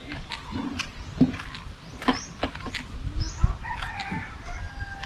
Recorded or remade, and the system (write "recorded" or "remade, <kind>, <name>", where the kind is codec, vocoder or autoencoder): recorded